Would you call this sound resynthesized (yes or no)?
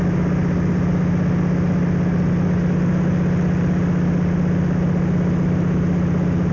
no